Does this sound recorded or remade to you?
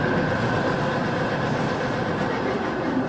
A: recorded